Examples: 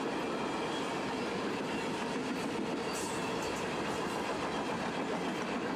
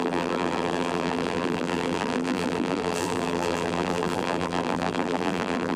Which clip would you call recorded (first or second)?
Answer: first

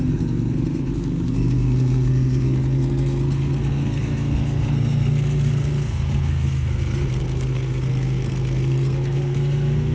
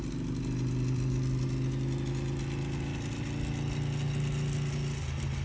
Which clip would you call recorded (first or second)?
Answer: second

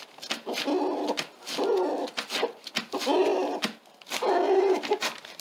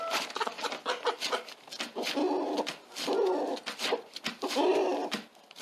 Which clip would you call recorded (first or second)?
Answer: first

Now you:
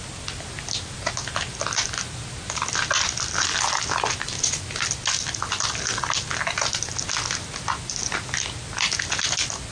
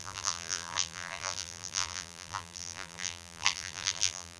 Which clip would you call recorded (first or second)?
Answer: first